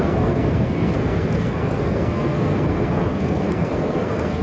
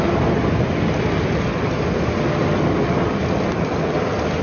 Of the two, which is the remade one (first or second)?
first